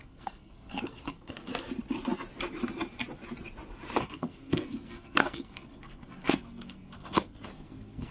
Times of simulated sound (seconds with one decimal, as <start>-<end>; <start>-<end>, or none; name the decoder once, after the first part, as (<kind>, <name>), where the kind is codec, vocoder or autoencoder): 0.0-1.5 (codec, SNAC); 4.0-8.1

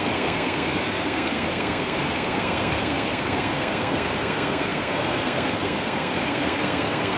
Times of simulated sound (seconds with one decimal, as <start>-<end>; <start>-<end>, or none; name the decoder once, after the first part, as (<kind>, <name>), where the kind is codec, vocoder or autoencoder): 0.0-7.2 (codec, SNAC)

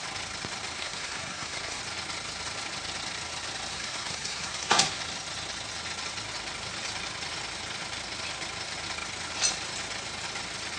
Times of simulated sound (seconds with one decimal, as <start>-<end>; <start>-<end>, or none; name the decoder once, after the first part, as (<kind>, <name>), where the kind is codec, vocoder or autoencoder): 0.8-1.8 (codec, SNAC); 3.7-5.0

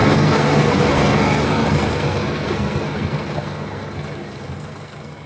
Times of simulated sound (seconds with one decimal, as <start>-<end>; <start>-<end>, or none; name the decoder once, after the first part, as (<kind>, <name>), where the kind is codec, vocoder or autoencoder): 0.0-5.3 (codec, SNAC)

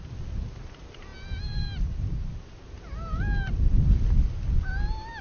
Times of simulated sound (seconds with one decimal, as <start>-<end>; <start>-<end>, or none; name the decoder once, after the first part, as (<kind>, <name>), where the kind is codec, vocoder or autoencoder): none

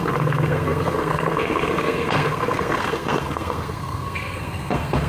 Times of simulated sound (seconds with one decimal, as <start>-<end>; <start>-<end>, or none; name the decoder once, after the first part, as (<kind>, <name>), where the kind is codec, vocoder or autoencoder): 0.0-5.1 (codec, SNAC)